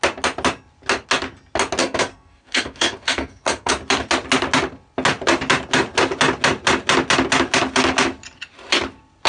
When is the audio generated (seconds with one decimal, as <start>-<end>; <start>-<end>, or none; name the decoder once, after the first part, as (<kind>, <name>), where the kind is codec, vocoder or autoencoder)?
1.8-3.7 (codec, SNAC)